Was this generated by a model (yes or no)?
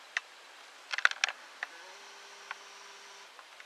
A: no